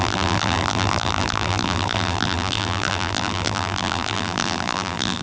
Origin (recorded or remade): remade